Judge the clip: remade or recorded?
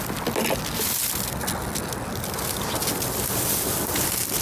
recorded